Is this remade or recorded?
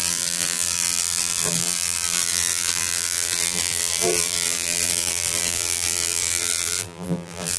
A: remade